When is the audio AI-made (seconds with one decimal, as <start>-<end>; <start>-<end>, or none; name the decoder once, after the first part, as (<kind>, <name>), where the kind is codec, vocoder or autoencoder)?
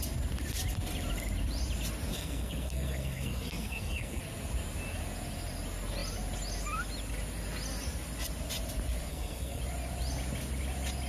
2.1-4.2 (codec, SNAC); 9.1-9.6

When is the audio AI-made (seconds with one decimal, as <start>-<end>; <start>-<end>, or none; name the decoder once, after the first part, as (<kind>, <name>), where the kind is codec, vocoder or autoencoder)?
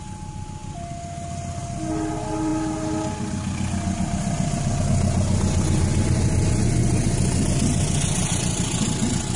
none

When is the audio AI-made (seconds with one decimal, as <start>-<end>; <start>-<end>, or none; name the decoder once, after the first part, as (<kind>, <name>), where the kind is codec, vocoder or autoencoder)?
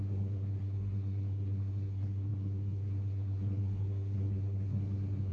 0.0-5.3 (codec, SNAC)